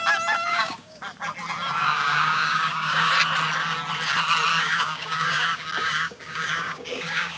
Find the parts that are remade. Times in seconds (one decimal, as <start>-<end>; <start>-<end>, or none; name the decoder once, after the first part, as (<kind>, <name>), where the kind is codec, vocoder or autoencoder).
0.5-1.0 (codec, DAC); 1.8-3.1; 4.5-7.4